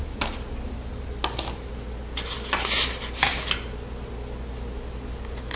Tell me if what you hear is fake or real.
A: real